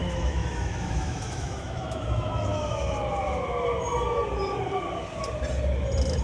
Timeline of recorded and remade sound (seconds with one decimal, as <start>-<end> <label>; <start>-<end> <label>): 0.0-2.5 remade; 2.5-6.2 recorded